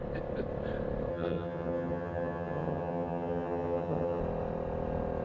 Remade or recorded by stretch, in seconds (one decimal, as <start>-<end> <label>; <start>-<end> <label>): 0.0-1.1 recorded; 1.1-4.2 remade; 4.2-5.2 recorded